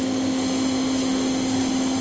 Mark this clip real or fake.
real